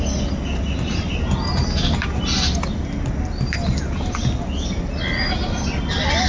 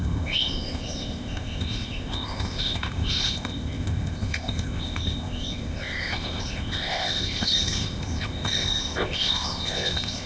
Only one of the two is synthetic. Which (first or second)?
second